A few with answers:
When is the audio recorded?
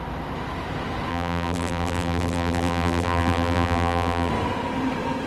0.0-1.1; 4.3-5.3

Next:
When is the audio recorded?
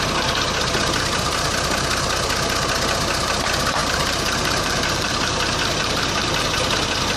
0.0-3.8; 6.4-7.2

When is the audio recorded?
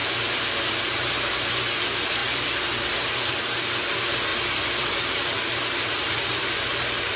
0.8-2.2; 3.1-4.3; 6.6-7.2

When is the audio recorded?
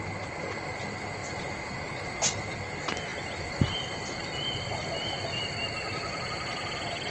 0.0-1.2; 2.2-7.1